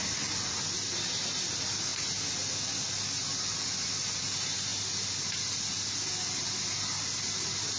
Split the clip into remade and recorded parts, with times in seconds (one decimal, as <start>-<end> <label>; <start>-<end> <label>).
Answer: 0.0-7.8 recorded